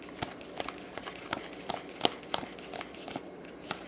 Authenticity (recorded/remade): recorded